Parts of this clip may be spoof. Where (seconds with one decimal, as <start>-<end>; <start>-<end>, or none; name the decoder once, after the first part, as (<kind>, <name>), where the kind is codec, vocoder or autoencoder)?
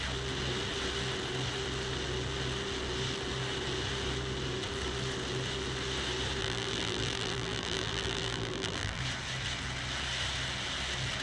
6.4-9.0 (vocoder, BigVGAN v2)